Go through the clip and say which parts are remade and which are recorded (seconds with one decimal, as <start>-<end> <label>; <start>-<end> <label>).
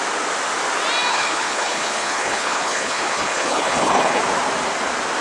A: 0.0-1.1 recorded; 1.1-4.2 remade; 4.2-5.2 recorded